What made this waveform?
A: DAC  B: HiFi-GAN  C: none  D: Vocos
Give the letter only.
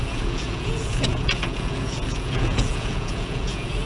D